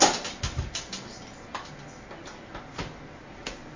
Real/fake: real